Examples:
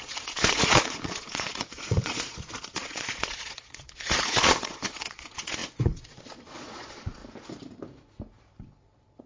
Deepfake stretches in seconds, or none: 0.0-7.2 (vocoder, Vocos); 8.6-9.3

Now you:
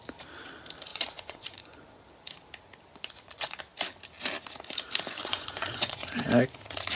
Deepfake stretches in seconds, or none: 0.9-2.0 (vocoder, Vocos); 2.9-3.6; 5.2-6.3